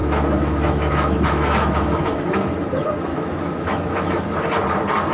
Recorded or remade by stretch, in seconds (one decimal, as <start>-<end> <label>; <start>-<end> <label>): 0.0-2.5 remade; 2.5-3.1 recorded; 3.1-4.2 remade; 4.2-5.1 recorded